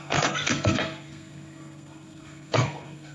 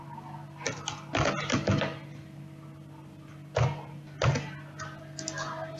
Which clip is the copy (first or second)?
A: first